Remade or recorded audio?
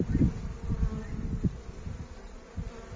recorded